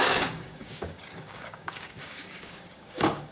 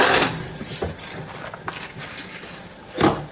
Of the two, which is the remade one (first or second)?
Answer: first